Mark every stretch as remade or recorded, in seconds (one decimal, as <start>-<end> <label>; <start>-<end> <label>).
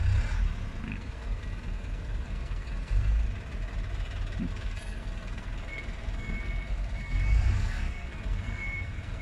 0.0-0.9 recorded; 0.9-3.2 remade; 3.2-4.5 recorded; 4.5-9.2 remade